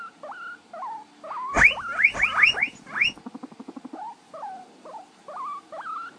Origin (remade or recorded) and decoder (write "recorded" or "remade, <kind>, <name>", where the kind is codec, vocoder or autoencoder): recorded